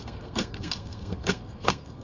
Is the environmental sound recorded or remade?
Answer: remade